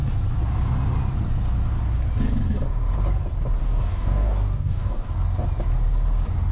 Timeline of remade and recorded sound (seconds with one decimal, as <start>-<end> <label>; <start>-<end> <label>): 0.0-3.6 recorded; 3.6-5.1 remade; 5.1-6.5 recorded